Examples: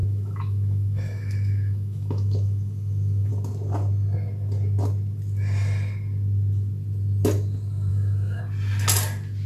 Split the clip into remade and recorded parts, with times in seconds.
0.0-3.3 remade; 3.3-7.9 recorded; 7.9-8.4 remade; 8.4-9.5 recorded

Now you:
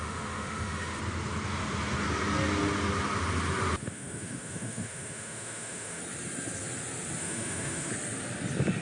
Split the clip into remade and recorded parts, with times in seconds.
0.0-1.0 remade; 1.0-3.8 recorded; 3.8-6.0 remade; 6.0-7.2 recorded; 7.2-7.9 remade; 7.9-8.8 recorded

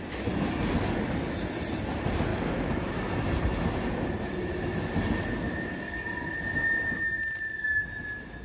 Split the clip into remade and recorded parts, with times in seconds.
0.0-2.3 recorded; 2.3-2.9 remade; 2.9-8.4 recorded

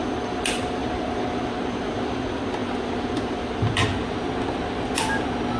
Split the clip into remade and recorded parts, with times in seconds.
0.0-5.6 recorded